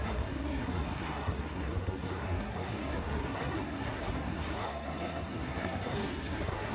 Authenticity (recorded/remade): remade